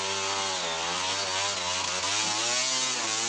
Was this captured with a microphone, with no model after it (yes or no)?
yes